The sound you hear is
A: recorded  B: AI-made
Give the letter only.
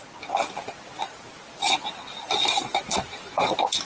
A